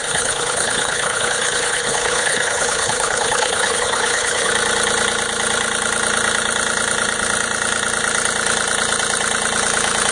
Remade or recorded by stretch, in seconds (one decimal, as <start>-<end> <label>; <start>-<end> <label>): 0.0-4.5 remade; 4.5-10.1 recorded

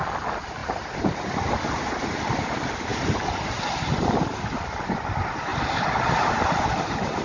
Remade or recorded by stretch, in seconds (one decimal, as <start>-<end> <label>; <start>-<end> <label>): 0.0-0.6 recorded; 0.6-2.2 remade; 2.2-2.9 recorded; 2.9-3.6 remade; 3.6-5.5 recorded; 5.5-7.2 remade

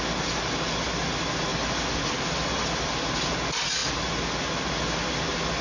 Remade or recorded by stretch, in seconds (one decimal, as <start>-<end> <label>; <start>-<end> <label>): 0.0-1.5 recorded; 1.5-3.3 remade; 3.3-5.6 recorded

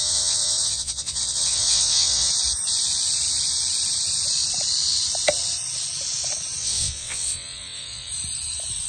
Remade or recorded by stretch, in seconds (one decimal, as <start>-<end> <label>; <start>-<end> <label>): 0.0-2.3 remade; 2.3-6.6 recorded; 6.6-8.1 remade; 8.1-8.9 recorded